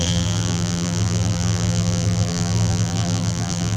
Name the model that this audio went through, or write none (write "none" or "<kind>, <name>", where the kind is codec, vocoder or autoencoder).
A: vocoder, BigVGAN v2